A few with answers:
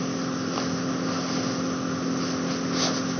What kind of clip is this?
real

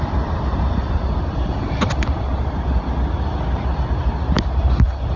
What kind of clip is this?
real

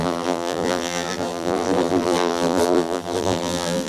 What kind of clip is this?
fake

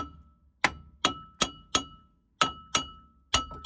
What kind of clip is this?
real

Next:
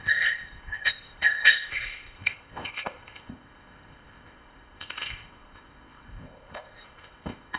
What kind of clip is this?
fake